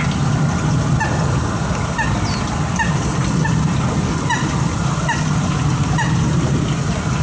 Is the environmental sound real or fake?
real